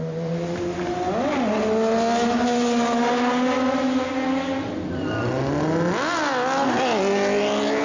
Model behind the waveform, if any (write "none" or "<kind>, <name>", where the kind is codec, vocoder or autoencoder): none